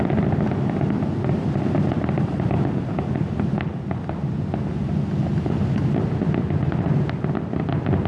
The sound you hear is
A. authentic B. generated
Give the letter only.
A